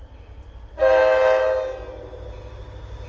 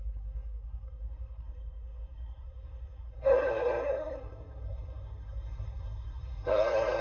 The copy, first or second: second